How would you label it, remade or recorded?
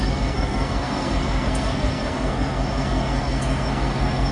remade